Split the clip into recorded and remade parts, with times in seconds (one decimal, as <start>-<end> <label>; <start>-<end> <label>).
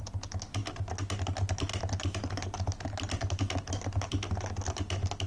0.0-5.3 recorded